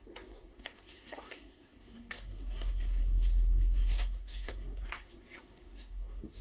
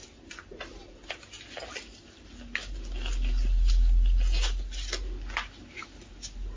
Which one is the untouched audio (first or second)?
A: second